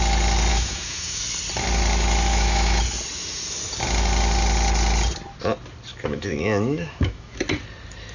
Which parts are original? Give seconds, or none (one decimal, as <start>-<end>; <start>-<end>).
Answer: 0.0-0.5; 1.2-2.3; 2.8-5.9; 7.4-8.1